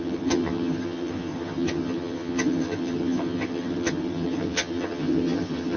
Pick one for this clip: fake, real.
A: fake